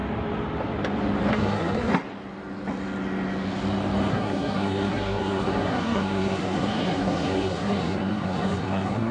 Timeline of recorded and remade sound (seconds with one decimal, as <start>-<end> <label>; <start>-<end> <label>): 0.0-1.3 recorded; 1.3-1.9 remade; 1.9-4.1 recorded; 4.1-9.1 remade